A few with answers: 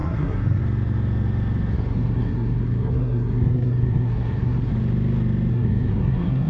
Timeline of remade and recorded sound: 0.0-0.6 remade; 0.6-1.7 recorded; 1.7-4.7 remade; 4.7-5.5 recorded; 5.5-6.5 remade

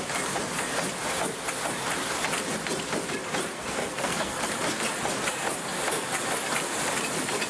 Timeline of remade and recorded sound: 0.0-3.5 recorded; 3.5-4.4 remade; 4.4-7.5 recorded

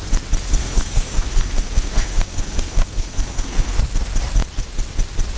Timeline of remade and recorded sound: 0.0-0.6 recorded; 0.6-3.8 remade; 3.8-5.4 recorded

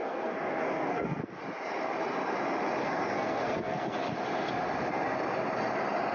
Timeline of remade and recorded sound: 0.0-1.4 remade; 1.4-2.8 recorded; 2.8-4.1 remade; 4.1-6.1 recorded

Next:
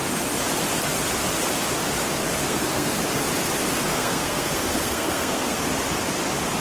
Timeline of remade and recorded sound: 0.0-2.4 recorded; 2.4-3.0 remade; 3.0-3.9 recorded; 3.9-5.6 remade; 5.6-6.6 recorded

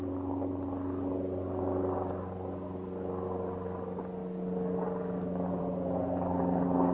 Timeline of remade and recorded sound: 0.0-6.9 recorded

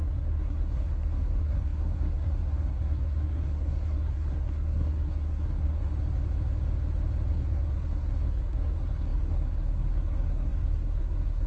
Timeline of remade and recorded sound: 0.0-5.9 remade; 5.9-7.3 recorded; 7.3-11.5 remade

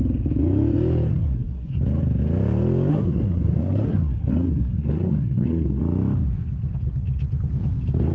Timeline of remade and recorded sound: 0.0-1.1 recorded; 1.1-1.8 remade; 1.8-2.9 recorded; 2.9-5.8 remade; 5.8-8.1 recorded